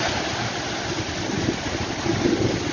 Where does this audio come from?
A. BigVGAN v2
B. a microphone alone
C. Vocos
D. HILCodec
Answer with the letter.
B